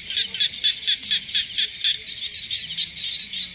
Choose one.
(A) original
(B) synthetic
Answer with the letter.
A